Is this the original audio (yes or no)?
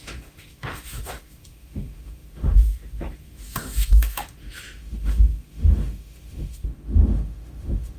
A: no